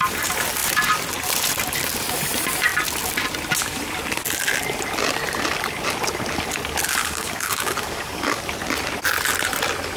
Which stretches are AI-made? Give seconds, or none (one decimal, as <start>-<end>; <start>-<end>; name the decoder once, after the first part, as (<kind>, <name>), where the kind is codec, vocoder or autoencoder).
7.0-8.4 (codec, DAC)